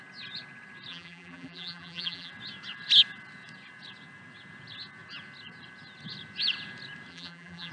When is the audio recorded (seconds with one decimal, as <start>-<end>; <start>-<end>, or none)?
0.0-0.9; 2.3-7.1